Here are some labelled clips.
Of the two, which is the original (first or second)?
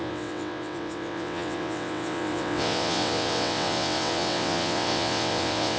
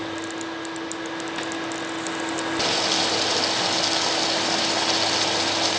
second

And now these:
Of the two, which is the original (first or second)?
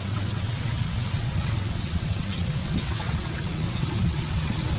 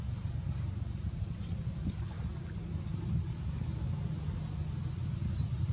second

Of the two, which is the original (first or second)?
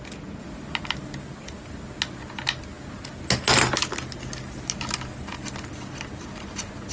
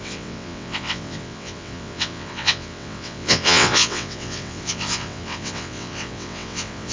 first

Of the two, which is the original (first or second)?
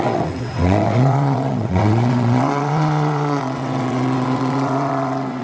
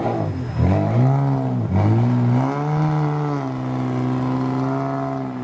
second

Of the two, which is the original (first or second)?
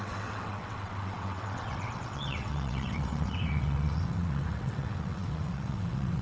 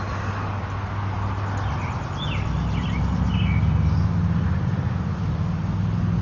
second